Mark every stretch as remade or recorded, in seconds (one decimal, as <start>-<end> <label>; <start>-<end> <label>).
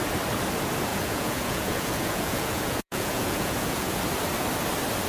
0.0-0.9 recorded; 0.9-4.0 remade; 4.0-5.1 recorded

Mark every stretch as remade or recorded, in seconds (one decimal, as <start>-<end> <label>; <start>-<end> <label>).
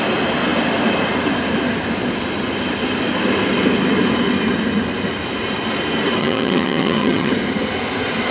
0.0-6.2 recorded; 6.2-7.3 remade; 7.3-8.3 recorded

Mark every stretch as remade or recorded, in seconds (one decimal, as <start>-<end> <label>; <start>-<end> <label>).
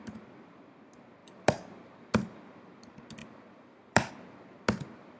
0.0-1.2 recorded; 1.2-1.8 remade; 1.8-3.2 recorded; 3.2-4.1 remade; 4.1-5.2 recorded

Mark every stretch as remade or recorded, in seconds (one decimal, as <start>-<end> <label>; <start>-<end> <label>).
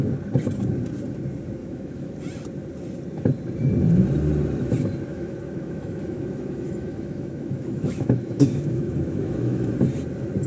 0.0-1.6 recorded; 1.6-2.1 remade; 2.1-5.1 recorded; 5.1-9.7 remade; 9.7-10.5 recorded